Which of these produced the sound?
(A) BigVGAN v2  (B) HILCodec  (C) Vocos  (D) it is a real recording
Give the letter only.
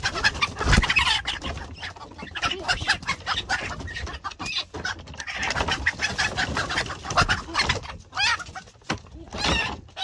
D